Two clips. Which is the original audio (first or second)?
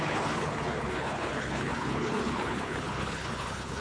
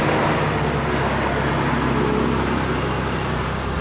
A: second